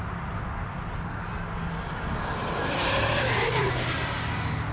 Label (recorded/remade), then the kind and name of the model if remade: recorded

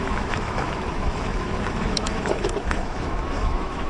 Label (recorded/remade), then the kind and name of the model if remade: remade, autoencoder, DAC-VAE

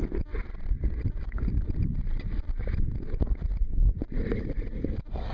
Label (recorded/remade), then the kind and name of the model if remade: recorded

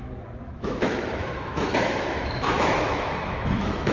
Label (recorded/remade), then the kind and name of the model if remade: remade, autoencoder, DAC-VAE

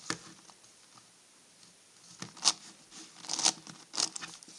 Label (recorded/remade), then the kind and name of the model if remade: recorded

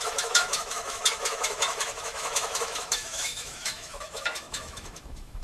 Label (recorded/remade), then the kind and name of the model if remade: remade, autoencoder, DAC-VAE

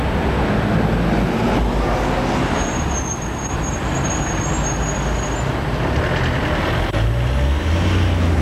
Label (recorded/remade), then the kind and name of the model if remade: recorded